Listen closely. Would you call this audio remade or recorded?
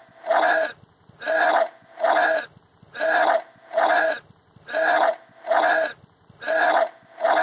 recorded